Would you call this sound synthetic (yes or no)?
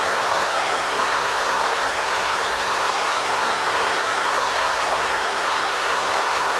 yes